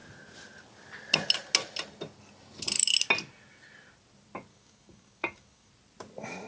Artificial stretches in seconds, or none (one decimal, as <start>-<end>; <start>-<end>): 4.5-5.7